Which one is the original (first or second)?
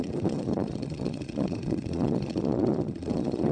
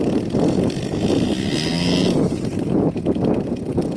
second